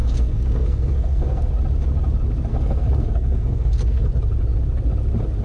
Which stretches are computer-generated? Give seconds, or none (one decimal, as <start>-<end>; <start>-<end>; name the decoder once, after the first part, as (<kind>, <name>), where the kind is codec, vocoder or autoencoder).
0.0-1.5 (codec, SNAC); 2.5-4.1